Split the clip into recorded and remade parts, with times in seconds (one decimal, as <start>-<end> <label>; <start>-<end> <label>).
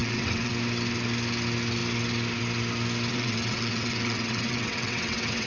0.0-0.5 remade; 0.5-3.1 recorded; 3.1-5.5 remade